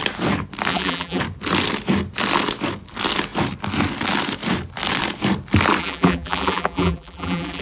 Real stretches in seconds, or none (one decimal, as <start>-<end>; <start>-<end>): 0.0-0.7; 1.2-5.8